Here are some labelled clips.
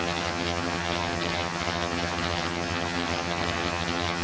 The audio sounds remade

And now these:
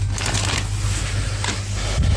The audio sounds recorded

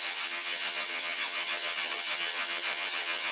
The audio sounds remade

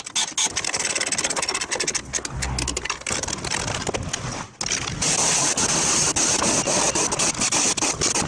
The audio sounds recorded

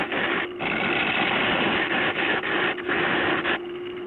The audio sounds recorded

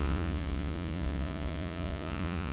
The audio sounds remade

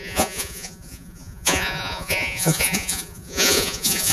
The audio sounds remade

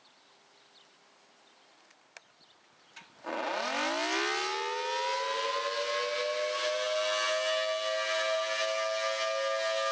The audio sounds recorded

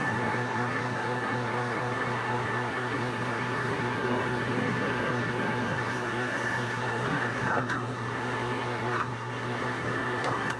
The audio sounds remade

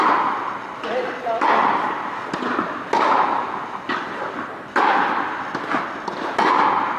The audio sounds recorded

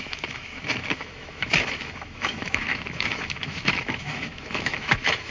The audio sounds remade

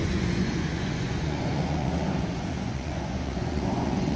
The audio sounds remade